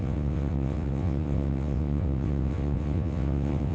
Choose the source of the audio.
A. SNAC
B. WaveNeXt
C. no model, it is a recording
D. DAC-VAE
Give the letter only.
B